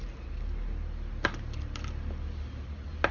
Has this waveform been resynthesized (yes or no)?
no